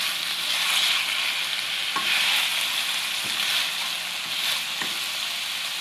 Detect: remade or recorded recorded